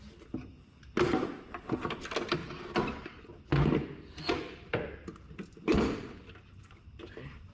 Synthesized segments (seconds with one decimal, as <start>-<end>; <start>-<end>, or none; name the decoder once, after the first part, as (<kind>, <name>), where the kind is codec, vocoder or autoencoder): none